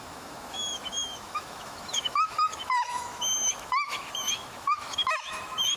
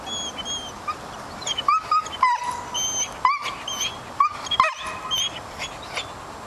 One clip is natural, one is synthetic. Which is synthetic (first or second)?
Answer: first